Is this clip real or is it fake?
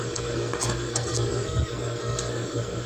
fake